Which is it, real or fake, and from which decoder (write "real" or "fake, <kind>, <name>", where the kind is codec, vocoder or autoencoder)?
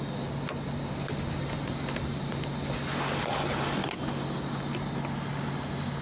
real